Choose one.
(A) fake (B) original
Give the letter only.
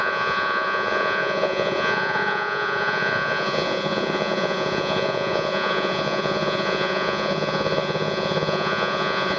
A